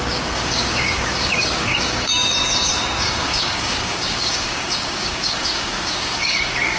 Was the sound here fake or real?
fake